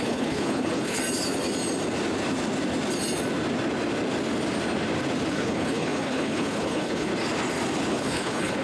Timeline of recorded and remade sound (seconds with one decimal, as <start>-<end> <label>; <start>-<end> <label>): 0.0-1.0 remade; 1.0-5.3 recorded; 5.3-7.1 remade; 7.1-7.9 recorded; 7.9-8.6 remade